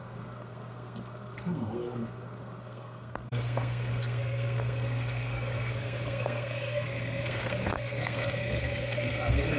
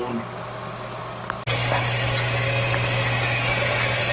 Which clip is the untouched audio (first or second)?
second